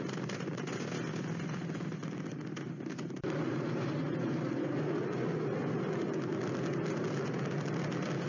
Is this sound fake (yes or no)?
no